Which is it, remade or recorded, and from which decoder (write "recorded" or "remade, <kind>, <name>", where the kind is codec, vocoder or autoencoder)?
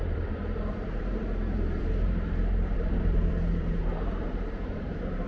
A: remade, vocoder, BigVGAN v2